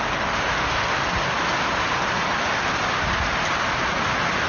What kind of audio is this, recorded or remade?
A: recorded